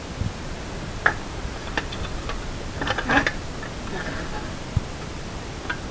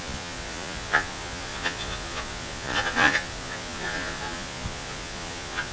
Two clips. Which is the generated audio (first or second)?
second